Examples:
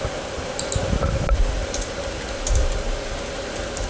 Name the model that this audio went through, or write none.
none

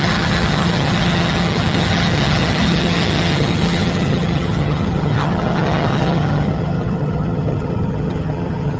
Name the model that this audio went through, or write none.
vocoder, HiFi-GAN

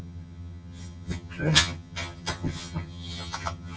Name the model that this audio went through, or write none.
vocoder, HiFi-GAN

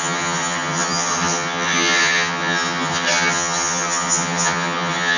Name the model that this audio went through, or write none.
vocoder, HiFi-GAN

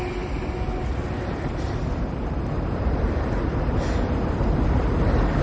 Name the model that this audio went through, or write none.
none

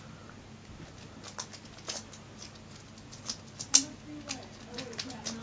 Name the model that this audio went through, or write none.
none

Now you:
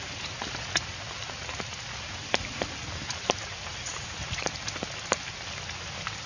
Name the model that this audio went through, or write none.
none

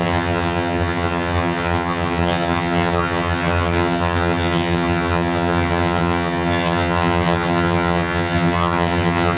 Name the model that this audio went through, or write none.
vocoder, HiFi-GAN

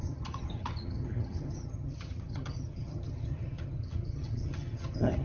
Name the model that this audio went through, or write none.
vocoder, HiFi-GAN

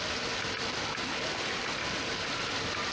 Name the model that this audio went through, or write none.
none